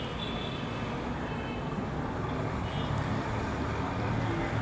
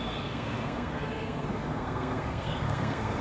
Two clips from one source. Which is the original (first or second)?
first